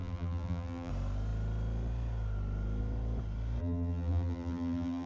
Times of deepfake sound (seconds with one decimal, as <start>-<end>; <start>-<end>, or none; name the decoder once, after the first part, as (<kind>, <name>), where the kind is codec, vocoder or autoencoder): 0.0-0.9 (vocoder, BigVGAN v2); 3.6-5.1